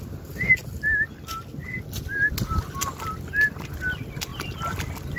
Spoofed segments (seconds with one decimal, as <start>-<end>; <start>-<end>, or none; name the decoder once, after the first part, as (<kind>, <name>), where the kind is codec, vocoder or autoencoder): 4.3-5.2 (vocoder, BigVGAN v2)